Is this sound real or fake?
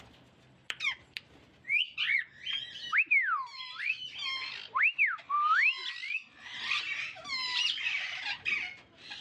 real